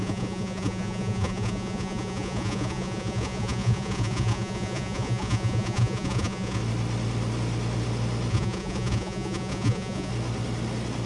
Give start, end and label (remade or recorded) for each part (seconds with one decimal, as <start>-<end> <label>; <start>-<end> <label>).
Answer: 0.0-6.6 remade; 6.6-8.3 recorded; 8.3-10.1 remade; 10.1-11.1 recorded